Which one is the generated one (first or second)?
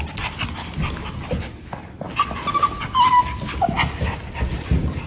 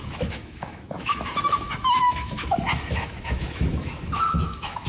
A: second